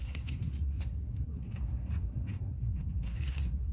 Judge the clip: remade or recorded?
remade